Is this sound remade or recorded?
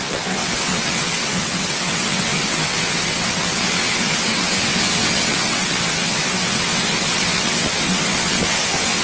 remade